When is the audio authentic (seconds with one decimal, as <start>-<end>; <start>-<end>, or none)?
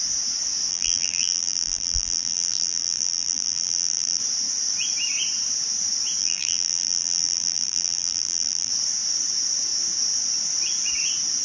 0.0-0.7; 4.2-6.2; 8.7-11.4